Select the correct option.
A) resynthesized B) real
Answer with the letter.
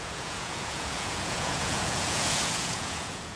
A